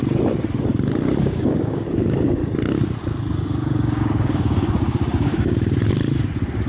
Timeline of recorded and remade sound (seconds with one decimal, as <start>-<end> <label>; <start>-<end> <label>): 0.0-1.2 recorded; 1.2-2.4 remade; 2.4-3.3 recorded; 3.3-5.9 remade; 5.9-6.7 recorded